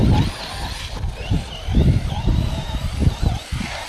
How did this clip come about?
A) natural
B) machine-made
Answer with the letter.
A